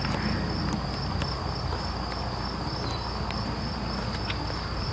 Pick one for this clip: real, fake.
real